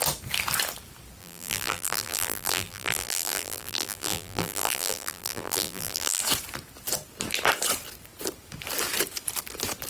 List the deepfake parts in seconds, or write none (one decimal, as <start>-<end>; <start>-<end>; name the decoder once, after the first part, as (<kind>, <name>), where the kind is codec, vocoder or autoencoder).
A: 1.2-6.2 (vocoder, BigVGAN v2)

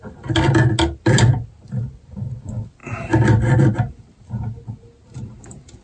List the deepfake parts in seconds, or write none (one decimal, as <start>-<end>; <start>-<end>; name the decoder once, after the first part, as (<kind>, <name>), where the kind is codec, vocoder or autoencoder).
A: none

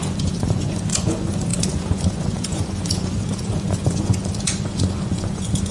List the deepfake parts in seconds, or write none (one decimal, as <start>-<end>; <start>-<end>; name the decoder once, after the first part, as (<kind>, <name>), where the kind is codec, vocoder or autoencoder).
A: 0.0-5.7 (vocoder, Vocos)